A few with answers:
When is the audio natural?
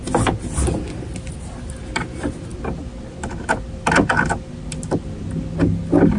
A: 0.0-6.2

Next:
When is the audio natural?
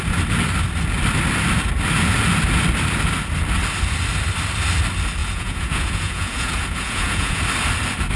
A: 0.0-5.2; 7.4-8.2